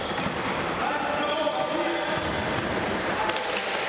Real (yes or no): yes